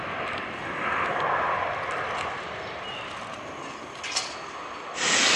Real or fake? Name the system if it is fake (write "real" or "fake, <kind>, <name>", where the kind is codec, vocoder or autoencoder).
real